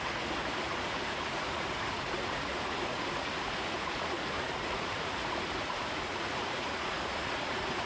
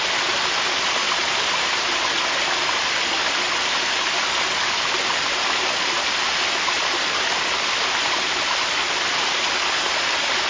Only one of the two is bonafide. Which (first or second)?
second